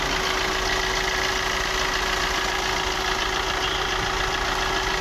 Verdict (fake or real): real